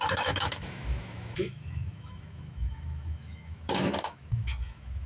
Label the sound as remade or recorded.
remade